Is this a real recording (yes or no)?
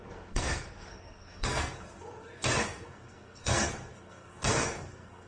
no